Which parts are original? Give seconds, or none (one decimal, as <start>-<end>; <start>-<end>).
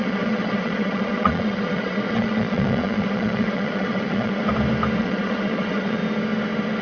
4.4-5.0; 6.0-6.8